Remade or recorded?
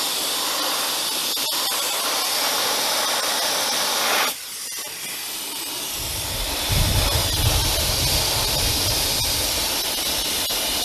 recorded